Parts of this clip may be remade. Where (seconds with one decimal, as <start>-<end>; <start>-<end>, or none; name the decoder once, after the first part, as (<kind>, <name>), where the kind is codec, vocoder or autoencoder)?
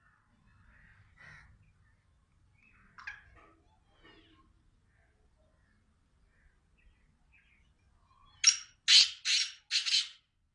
none